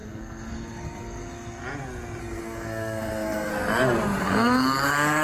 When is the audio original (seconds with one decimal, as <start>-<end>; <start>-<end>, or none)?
1.6-2.2; 3.5-4.2